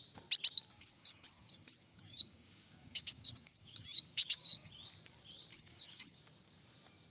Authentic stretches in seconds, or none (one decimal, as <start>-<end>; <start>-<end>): 0.0-0.7; 4.7-5.5; 6.2-7.1